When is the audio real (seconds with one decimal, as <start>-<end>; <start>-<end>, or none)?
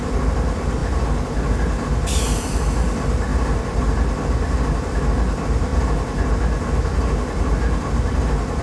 0.0-8.6